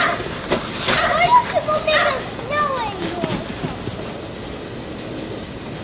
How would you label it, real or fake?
real